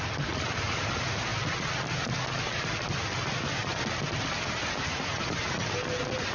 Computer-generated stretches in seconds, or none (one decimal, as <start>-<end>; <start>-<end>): 4.9-5.4